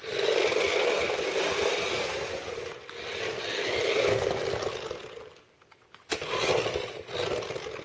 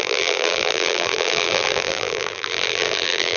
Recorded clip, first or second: first